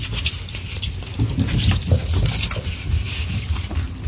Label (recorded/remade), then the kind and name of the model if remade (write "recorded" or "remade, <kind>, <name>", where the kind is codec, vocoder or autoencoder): recorded